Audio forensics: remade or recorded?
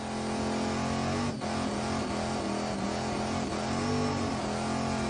recorded